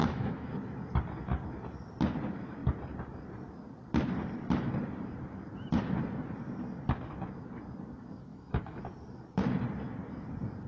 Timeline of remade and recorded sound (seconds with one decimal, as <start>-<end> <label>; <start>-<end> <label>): 0.0-0.5 remade; 0.5-8.3 recorded; 8.3-8.8 remade; 8.8-10.7 recorded

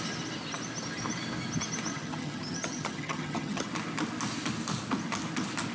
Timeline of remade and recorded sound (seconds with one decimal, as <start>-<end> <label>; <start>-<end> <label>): 0.0-1.9 recorded; 1.9-3.7 remade; 3.7-5.7 recorded

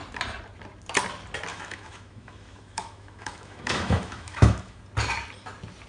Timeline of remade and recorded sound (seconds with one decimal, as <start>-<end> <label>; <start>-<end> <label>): 0.0-1.5 recorded; 1.5-4.8 remade; 4.8-5.9 recorded